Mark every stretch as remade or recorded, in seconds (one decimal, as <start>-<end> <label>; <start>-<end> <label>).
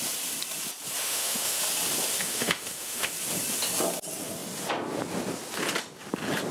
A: 0.0-1.0 recorded; 1.0-1.6 remade; 1.6-2.1 recorded; 2.1-3.1 remade; 3.1-6.5 recorded